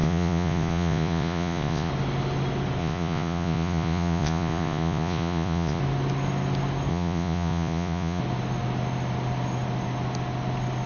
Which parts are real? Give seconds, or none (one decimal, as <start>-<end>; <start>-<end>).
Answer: 1.9-2.8; 5.8-6.9; 8.2-10.9